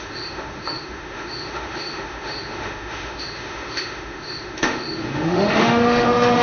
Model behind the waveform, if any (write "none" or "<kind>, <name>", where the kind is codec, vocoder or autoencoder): autoencoder, DAC-VAE